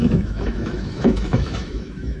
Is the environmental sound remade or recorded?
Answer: remade